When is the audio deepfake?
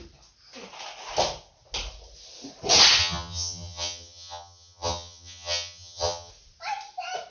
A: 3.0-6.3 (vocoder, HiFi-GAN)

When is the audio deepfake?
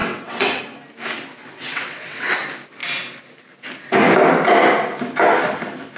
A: 0.0-0.6 (vocoder, WaveNeXt); 1.4-2.3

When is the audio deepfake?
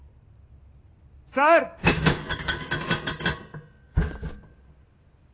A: 1.3-2.7 (codec, DAC); 3.9-4.4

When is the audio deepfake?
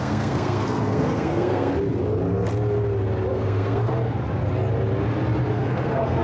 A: 0.0-1.7 (codec, SNAC); 3.3-3.9; 5.5-6.2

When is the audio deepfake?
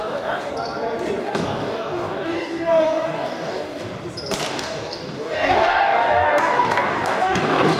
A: 0.0-0.5 (codec, DAC); 1.2-3.9; 4.5-7.8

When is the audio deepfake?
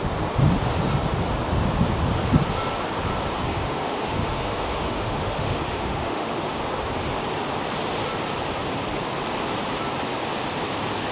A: 3.5-6.5 (autoencoder, DAC-VAE)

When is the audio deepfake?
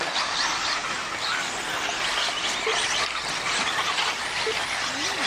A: none